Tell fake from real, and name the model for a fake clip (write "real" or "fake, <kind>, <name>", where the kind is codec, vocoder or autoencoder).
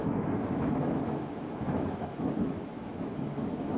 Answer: fake, autoencoder, DAC-VAE